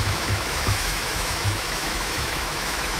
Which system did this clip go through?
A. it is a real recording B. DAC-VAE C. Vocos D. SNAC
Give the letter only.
B